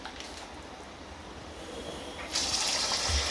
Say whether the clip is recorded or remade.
remade